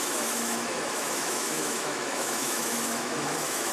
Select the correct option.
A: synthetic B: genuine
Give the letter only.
A